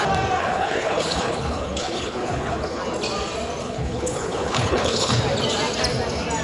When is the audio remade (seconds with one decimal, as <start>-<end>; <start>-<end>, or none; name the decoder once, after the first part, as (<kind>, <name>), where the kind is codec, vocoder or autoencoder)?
0.4-2.8 (codec, HILCodec); 3.6-5.2